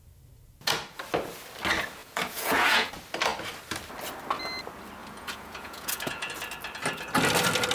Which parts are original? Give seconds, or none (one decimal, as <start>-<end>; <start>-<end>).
0.0-2.0; 2.9-5.0; 6.3-7.7